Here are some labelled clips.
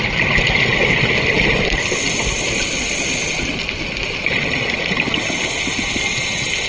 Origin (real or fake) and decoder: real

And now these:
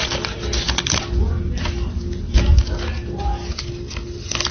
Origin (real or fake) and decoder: real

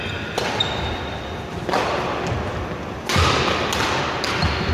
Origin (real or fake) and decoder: real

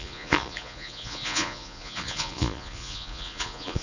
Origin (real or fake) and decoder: fake, vocoder, Vocos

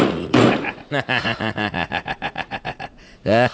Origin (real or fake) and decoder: fake, vocoder, Vocos